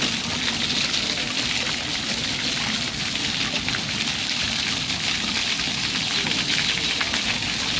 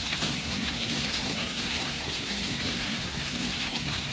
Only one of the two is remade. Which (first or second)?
second